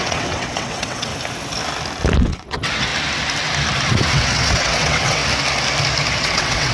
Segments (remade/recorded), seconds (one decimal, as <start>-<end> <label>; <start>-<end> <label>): 0.0-1.1 remade; 1.1-2.2 recorded; 2.2-2.9 remade; 2.9-3.9 recorded; 3.9-5.2 remade; 5.2-6.2 recorded; 6.2-6.7 remade